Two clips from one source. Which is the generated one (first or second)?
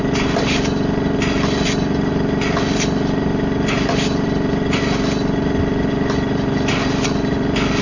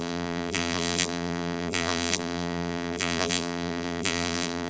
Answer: second